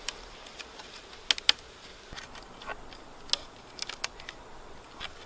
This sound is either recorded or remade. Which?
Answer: recorded